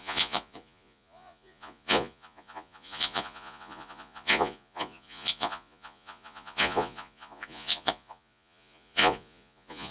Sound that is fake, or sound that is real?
fake